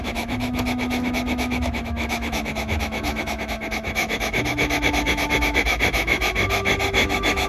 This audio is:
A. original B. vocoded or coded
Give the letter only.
B